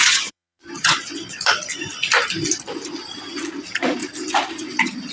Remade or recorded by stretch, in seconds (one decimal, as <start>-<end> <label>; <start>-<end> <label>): 0.0-1.7 remade; 1.7-3.6 recorded; 3.6-4.0 remade; 4.0-5.1 recorded